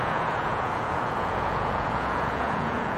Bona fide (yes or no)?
no